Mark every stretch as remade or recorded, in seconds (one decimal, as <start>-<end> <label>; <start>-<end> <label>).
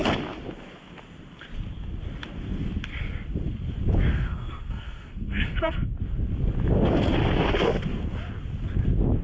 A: 0.0-4.1 recorded; 4.1-5.9 remade; 5.9-9.2 recorded